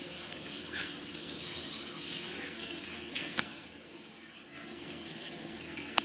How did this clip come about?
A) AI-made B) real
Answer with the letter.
A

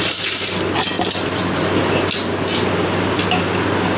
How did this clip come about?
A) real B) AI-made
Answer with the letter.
A